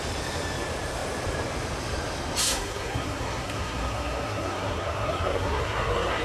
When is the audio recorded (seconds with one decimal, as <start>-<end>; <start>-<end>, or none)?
0.0-2.4